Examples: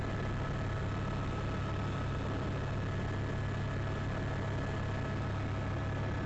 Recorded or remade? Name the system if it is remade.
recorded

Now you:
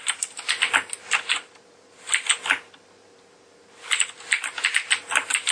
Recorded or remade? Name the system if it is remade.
recorded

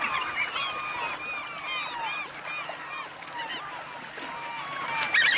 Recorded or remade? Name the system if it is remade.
recorded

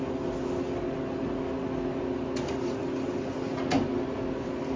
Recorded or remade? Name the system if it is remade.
recorded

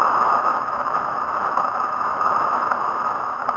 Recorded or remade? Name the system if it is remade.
remade, autoencoder, DAC-VAE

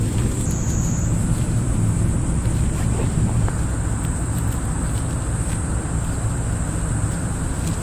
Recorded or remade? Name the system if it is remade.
recorded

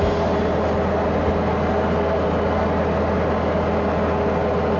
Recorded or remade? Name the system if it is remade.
recorded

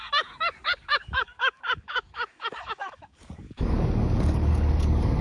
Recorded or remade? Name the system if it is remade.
remade, codec, DAC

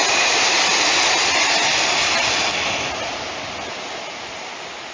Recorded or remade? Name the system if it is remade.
recorded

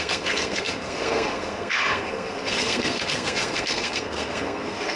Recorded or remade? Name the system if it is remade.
remade, codec, SNAC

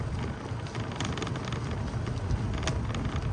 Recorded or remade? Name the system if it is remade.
recorded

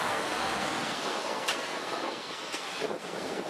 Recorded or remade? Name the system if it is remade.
remade, codec, SNAC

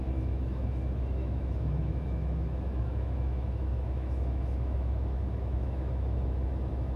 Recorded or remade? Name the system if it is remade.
remade, autoencoder, DAC-VAE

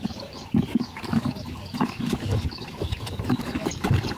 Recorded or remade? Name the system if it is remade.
remade, codec, DAC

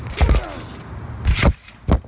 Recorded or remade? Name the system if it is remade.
recorded